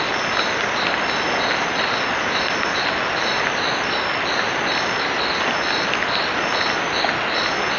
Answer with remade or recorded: recorded